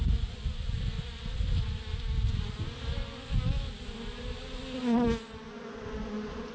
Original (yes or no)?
yes